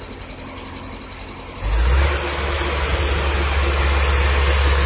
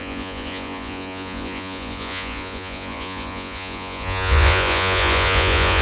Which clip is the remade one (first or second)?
second